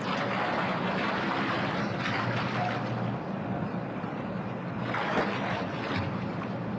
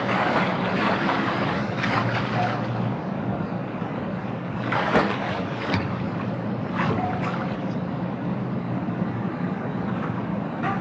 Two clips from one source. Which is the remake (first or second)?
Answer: second